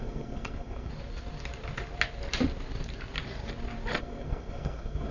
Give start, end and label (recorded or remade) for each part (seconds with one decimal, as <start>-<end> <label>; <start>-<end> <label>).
0.0-0.9 remade; 0.9-4.0 recorded; 4.0-5.1 remade